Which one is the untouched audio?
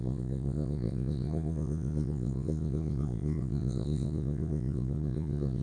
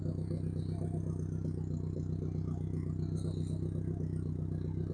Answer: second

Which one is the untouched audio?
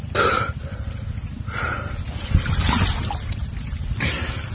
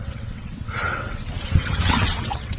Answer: first